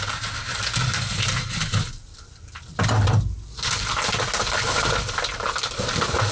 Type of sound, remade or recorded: recorded